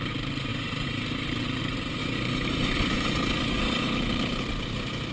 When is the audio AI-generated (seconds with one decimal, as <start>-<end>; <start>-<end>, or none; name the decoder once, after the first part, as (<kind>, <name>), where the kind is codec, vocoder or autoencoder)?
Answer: 0.5-1.6 (vocoder, BigVGAN v2)